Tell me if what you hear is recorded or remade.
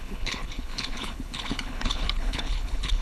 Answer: remade